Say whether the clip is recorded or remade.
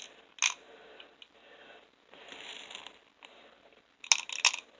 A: recorded